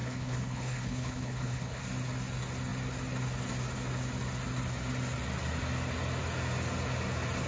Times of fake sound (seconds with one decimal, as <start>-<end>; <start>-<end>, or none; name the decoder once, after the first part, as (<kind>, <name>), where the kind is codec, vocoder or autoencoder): 0.0-1.8 (codec, HILCodec)